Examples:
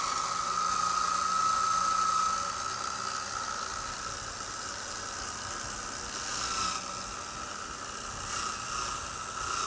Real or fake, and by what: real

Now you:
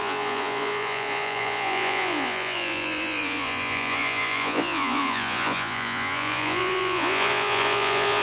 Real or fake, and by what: fake, vocoder, Vocos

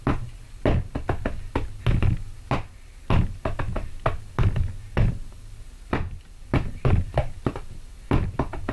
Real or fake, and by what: real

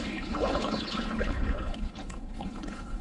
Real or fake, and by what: fake, codec, HILCodec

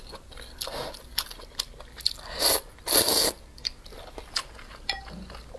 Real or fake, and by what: real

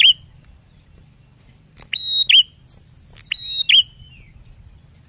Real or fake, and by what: real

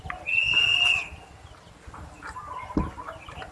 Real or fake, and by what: real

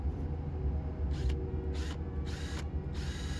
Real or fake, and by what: real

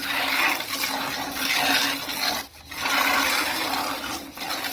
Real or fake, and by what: real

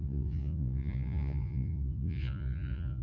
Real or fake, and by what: fake, vocoder, Vocos